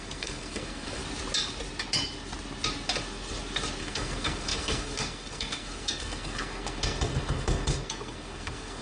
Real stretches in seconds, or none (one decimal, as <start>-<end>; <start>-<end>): 1.0-3.8